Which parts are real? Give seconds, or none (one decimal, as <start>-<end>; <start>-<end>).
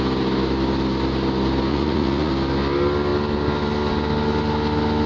0.0-1.7; 2.3-5.1